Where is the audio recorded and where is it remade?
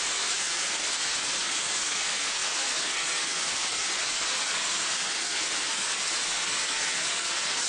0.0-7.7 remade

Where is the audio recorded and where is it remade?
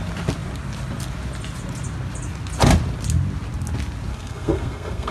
0.0-4.1 recorded; 4.1-5.1 remade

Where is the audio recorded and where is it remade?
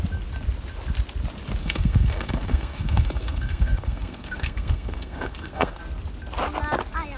0.0-1.6 recorded; 1.6-5.8 remade; 5.8-7.2 recorded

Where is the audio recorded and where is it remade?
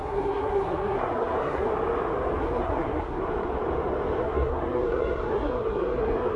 0.0-1.7 remade; 1.7-2.4 recorded; 2.4-3.2 remade; 3.2-4.2 recorded; 4.2-6.4 remade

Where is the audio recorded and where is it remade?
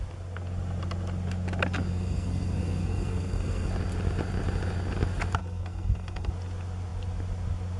0.0-1.9 recorded; 1.9-3.7 remade; 3.7-5.4 recorded; 5.4-6.3 remade; 6.3-7.8 recorded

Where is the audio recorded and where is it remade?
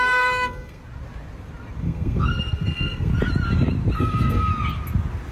0.0-0.8 remade; 0.8-1.8 recorded; 1.8-3.1 remade; 3.1-4.0 recorded; 4.0-4.5 remade; 4.5-5.3 recorded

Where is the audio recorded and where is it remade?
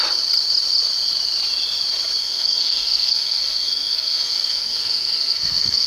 0.0-2.2 recorded; 2.2-5.9 remade